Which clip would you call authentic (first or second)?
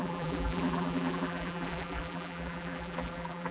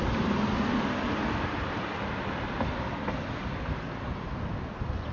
second